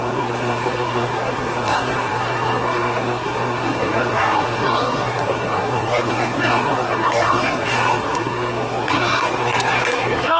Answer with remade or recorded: remade